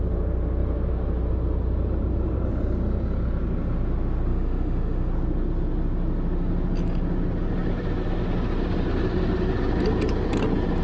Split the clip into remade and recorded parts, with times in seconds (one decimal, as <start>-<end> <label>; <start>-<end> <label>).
0.0-4.3 recorded; 4.3-5.1 remade; 5.1-10.8 recorded